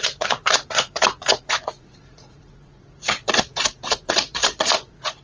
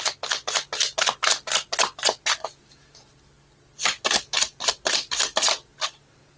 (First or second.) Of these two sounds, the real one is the second